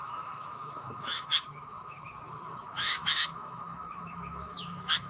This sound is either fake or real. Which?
fake